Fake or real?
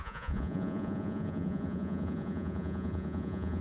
fake